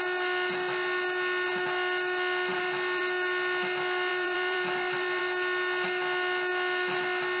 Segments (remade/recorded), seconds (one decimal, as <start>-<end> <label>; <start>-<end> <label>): 0.0-2.5 recorded; 2.5-3.0 remade; 3.0-4.1 recorded; 4.1-5.2 remade; 5.2-7.4 recorded